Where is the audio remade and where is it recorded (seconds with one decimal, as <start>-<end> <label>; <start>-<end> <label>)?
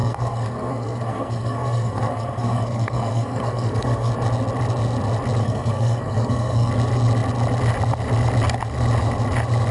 0.0-4.1 remade; 4.1-5.4 recorded; 5.4-6.7 remade; 6.7-9.7 recorded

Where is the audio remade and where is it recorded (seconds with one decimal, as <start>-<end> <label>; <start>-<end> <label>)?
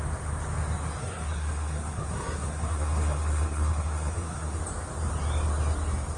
0.0-1.0 recorded; 1.0-4.6 remade; 4.6-6.2 recorded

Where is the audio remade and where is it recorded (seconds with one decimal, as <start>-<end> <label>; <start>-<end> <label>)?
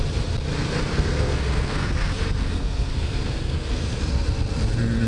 0.0-0.9 recorded; 0.9-4.0 remade; 4.0-5.1 recorded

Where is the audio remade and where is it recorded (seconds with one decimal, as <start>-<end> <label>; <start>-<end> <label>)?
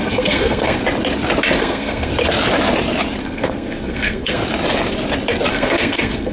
0.0-0.8 remade; 0.8-1.6 recorded; 1.6-2.1 remade; 2.1-3.2 recorded; 3.2-4.4 remade; 4.4-5.5 recorded; 5.5-6.3 remade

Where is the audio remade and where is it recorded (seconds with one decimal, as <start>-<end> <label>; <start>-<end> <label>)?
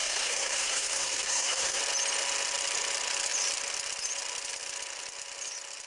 0.0-1.8 remade; 1.8-5.9 recorded